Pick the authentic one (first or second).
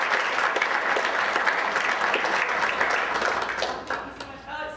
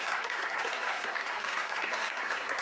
first